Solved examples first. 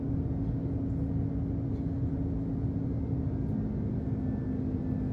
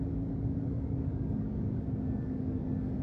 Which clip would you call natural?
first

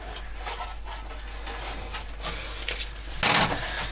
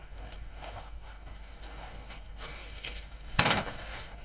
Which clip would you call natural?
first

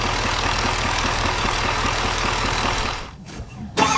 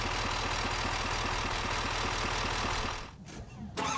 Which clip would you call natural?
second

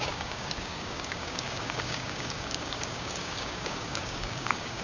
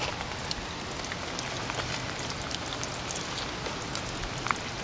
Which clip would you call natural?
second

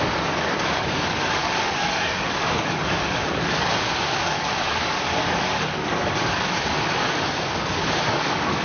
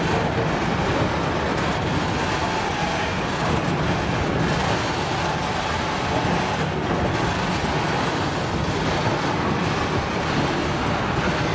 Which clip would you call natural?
second